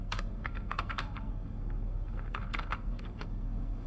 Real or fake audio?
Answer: fake